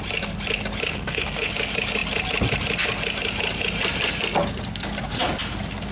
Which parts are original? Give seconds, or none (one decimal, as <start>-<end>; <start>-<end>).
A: 0.0-0.9; 1.5-5.9